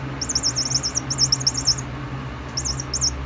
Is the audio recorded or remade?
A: recorded